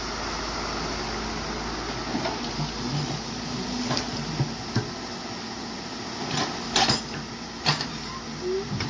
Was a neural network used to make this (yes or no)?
no